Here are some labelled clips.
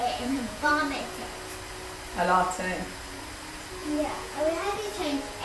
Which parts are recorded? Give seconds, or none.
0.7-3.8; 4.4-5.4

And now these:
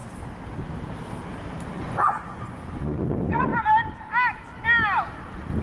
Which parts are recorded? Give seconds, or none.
0.0-1.7; 3.5-5.6

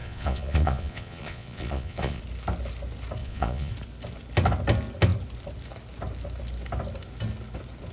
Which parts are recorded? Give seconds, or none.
2.2-3.2; 3.7-7.9

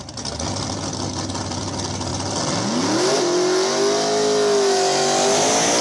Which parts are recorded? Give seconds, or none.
0.0-5.8